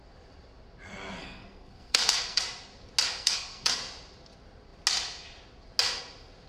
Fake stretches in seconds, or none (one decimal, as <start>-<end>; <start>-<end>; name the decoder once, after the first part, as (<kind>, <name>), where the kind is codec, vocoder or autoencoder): 1.2-2.4 (codec, SNAC); 3.1-3.8